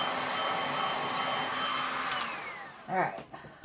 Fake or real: real